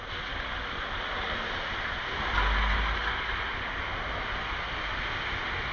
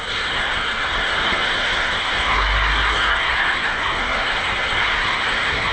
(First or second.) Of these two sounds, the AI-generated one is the second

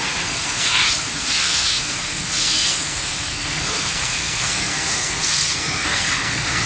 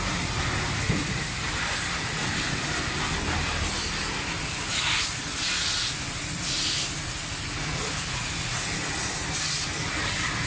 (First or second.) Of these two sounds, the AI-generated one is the first